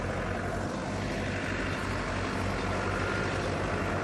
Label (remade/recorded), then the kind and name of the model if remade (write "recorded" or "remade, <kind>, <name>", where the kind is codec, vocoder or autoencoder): recorded